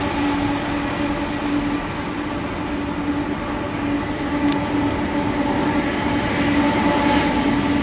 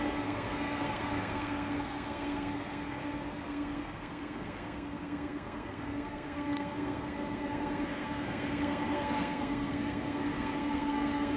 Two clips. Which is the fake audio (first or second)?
second